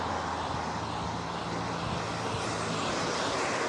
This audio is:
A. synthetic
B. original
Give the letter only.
B